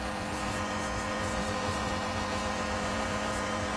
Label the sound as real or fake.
fake